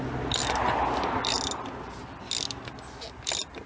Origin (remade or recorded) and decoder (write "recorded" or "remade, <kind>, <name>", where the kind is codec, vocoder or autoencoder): recorded